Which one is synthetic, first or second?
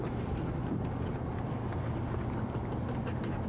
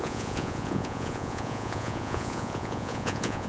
second